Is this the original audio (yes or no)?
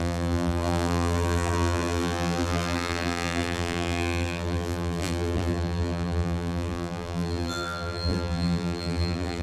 no